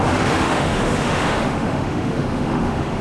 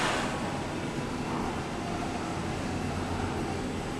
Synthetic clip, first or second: first